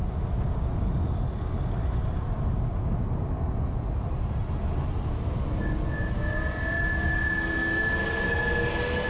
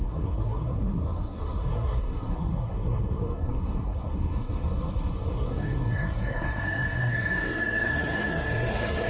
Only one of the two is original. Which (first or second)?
first